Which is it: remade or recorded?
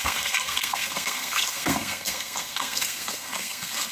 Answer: remade